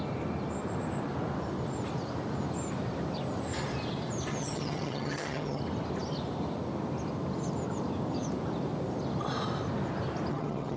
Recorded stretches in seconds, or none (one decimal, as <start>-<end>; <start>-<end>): 0.0-4.3; 5.6-10.3

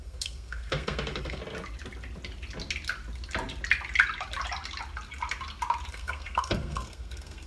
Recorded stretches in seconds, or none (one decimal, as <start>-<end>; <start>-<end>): 1.4-5.9

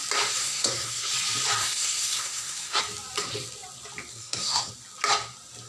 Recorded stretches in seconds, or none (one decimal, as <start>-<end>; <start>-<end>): 0.0-0.4; 1.1-1.6; 2.8-4.1; 4.7-5.7

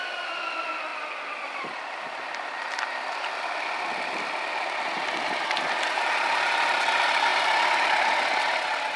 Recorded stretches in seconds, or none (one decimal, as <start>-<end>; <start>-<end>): 0.0-9.0

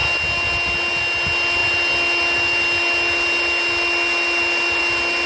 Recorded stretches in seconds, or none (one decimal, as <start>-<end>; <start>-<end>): 0.0-5.3

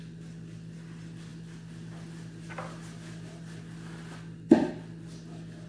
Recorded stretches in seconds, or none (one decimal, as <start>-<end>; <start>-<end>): 0.0-5.7